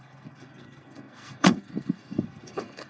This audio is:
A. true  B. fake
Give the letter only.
B